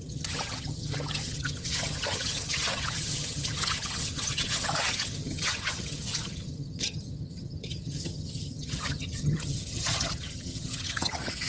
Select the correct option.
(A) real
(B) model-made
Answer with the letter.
B